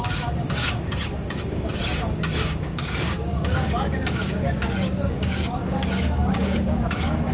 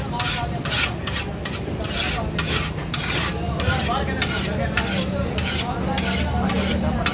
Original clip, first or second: second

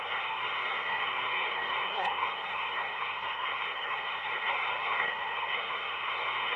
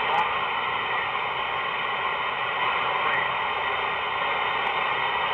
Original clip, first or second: second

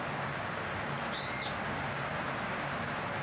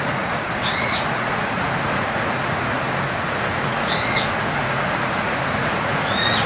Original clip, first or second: first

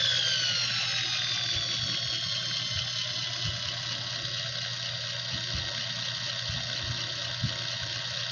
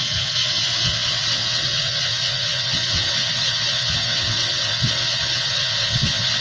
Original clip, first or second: first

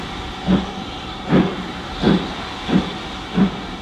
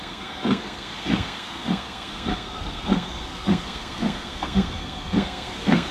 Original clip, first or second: first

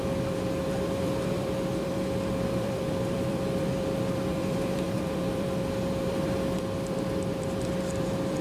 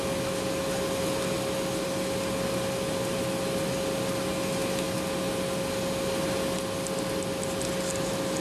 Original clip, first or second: second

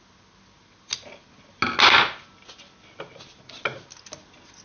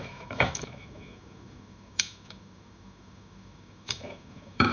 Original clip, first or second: first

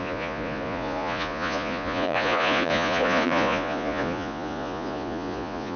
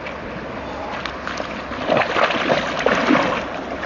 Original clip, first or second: second